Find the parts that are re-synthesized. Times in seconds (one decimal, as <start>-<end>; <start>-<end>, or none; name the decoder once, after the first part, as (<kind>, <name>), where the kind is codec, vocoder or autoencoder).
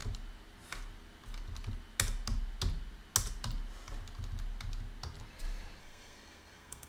5.8-6.9 (codec, SNAC)